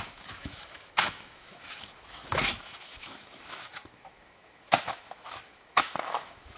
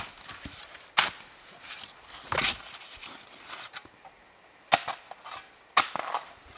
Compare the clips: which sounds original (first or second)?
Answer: second